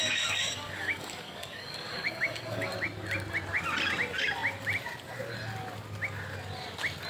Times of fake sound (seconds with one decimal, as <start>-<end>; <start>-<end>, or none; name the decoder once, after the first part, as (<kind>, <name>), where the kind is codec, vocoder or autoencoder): 0.0-2.7 (codec, DAC)